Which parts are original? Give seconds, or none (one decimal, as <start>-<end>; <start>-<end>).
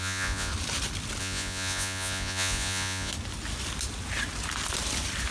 0.5-1.2; 3.1-5.3